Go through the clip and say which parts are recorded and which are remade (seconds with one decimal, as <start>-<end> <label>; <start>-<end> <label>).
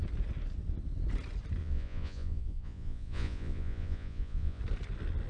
0.0-1.6 recorded; 1.6-4.6 remade; 4.6-5.3 recorded